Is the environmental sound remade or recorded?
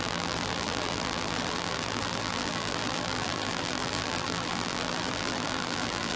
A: remade